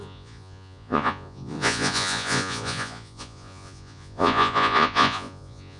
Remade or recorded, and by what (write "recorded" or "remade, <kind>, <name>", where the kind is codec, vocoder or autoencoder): remade, vocoder, Vocos